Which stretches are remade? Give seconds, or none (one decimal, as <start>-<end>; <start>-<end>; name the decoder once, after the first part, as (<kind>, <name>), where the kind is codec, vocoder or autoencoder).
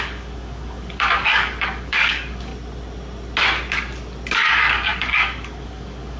0.0-2.5 (codec, DAC); 4.3-6.2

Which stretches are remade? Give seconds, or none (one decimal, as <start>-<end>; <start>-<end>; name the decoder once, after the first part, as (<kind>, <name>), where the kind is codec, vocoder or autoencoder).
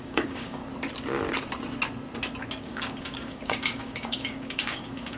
0.0-0.6 (codec, DAC); 2.6-5.2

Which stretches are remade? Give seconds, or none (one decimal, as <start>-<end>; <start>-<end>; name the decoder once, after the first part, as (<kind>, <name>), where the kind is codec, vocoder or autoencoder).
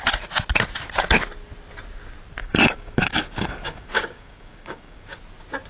2.4-5.2 (codec, DAC)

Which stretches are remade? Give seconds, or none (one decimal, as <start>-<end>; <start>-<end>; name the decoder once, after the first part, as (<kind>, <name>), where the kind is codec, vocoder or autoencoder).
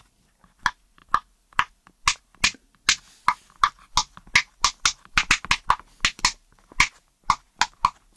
none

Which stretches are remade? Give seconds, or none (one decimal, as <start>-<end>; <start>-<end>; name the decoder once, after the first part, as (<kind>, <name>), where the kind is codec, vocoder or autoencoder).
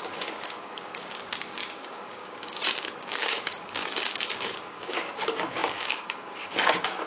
0.0-7.1 (codec, DAC)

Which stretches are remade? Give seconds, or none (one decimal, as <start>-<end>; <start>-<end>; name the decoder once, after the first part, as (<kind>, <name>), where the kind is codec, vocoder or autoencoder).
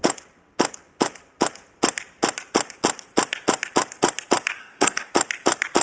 4.6-5.1 (codec, DAC)